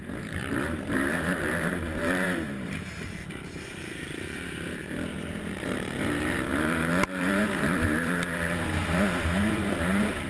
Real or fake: fake